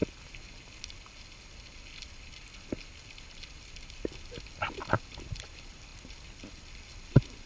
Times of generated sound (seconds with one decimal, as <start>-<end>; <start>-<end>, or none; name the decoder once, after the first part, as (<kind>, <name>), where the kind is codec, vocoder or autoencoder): none